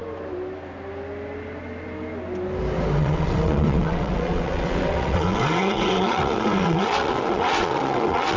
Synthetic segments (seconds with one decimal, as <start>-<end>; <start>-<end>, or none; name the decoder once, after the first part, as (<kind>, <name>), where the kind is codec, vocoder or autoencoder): 3.0-8.4 (vocoder, WaveNeXt)